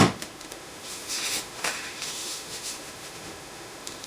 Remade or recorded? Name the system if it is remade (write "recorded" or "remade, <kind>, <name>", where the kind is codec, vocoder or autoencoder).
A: remade, autoencoder, DAC-VAE